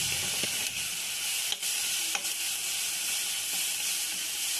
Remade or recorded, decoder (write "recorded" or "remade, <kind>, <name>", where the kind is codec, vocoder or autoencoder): recorded